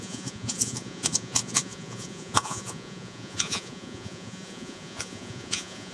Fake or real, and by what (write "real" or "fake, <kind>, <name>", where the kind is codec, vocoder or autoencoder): fake, vocoder, Vocos